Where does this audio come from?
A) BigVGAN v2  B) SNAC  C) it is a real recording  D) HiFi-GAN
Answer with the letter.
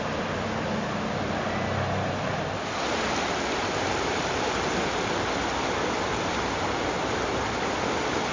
C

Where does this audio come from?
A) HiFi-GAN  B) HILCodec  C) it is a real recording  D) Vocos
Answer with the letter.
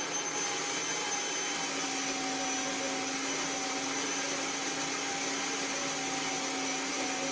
C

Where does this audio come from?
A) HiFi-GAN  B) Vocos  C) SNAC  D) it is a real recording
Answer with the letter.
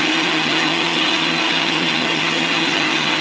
A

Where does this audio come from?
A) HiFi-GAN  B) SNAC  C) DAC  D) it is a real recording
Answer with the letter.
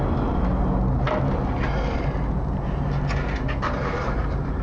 D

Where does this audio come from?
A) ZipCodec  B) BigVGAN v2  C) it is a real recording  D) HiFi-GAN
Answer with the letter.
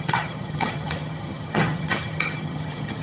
D